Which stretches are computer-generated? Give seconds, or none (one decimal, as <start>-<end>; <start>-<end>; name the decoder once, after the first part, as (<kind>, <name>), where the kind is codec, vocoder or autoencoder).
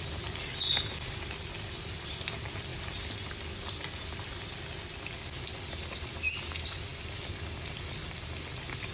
none